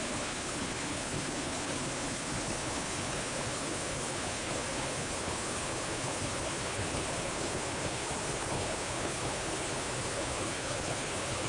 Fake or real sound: fake